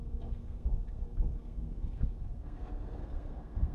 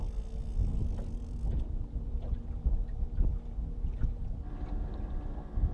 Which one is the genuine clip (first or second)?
second